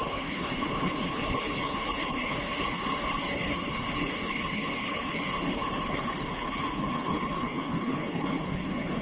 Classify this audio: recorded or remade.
remade